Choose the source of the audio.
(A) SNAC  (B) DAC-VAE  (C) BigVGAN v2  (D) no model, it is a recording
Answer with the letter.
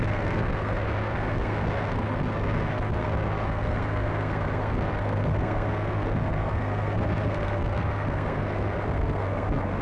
A